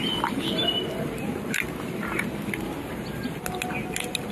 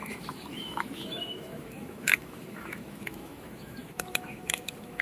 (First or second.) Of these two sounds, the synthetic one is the second